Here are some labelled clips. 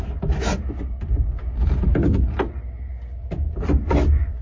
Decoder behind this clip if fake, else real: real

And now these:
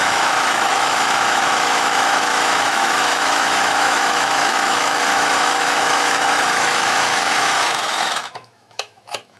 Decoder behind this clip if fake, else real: fake, autoencoder, DAC-VAE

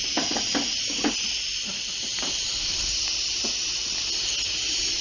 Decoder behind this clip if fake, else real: real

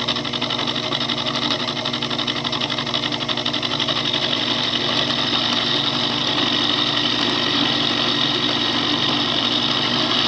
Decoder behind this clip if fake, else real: real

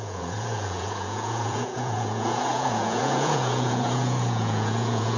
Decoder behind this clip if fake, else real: fake, vocoder, Vocos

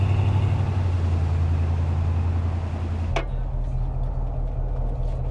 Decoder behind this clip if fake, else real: real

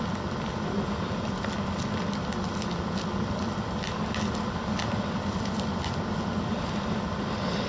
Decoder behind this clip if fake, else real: real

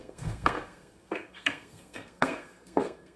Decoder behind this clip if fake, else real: fake, codec, SNAC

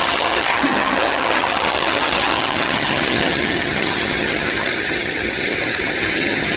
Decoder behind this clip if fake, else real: fake, vocoder, HiFi-GAN